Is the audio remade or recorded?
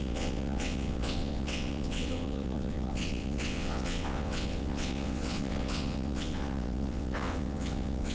remade